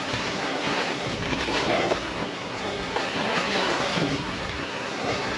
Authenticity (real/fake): fake